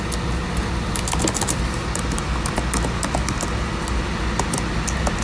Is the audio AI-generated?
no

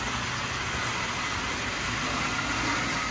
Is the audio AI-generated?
no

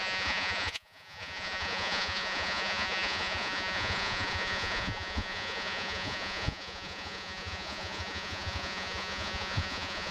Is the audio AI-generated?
yes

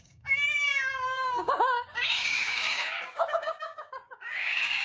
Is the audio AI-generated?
yes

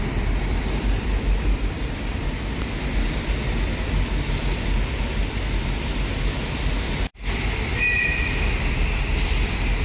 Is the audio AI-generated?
yes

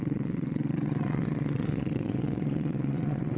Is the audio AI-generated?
yes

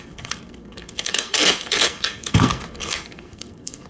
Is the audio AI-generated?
yes